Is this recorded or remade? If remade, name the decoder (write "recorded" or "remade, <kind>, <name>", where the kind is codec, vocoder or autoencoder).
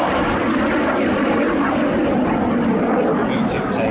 recorded